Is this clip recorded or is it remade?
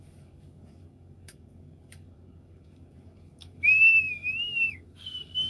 remade